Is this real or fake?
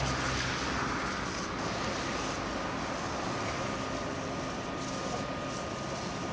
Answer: real